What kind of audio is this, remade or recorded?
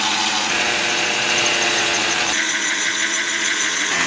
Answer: remade